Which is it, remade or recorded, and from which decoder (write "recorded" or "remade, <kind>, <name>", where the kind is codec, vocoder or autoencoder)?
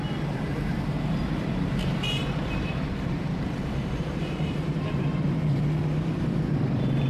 remade, vocoder, BigVGAN v2